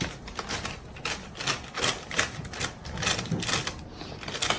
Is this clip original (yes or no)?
yes